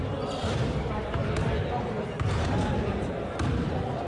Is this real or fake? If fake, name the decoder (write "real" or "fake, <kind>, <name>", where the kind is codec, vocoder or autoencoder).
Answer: real